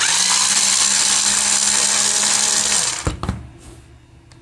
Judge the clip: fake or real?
real